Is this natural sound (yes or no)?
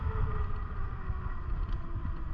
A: yes